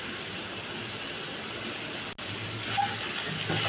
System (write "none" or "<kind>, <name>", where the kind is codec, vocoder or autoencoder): none